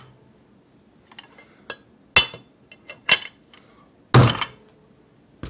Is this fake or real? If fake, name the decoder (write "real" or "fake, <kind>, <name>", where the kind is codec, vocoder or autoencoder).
real